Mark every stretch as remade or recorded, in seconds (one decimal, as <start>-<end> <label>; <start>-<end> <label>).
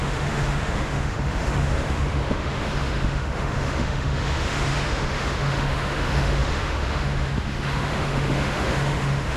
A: 0.0-9.4 remade